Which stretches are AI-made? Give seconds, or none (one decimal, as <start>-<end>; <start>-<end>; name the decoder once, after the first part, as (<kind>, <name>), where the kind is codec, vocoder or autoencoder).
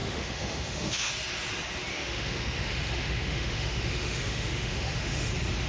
0.0-1.1 (autoencoder, DAC-VAE); 1.9-5.3